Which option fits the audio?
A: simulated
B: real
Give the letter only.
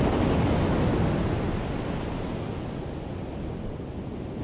B